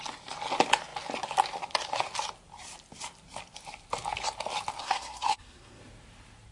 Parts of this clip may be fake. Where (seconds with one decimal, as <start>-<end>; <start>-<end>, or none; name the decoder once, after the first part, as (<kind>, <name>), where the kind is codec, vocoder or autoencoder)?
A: 4.8-5.8 (codec, SNAC)